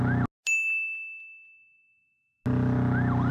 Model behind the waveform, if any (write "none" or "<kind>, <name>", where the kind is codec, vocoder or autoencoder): none